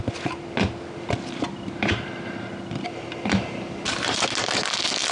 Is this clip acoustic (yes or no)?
yes